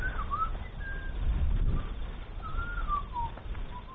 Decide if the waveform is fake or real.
real